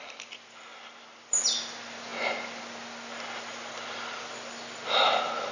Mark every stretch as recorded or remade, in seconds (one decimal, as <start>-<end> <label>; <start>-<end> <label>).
0.0-5.5 recorded